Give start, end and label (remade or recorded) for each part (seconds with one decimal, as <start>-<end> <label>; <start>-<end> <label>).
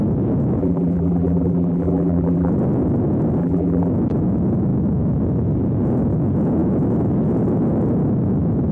0.0-0.6 recorded; 0.6-2.5 remade; 2.5-3.4 recorded; 3.4-3.9 remade; 3.9-8.7 recorded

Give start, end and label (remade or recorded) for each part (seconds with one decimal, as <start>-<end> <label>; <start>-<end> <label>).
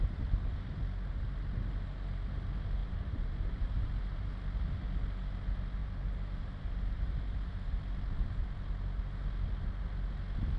0.0-2.8 recorded; 2.8-4.3 remade; 4.3-5.8 recorded; 5.8-7.8 remade; 7.8-10.6 recorded